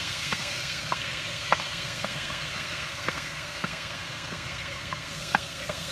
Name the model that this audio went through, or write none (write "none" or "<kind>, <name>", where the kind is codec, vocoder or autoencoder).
codec, SNAC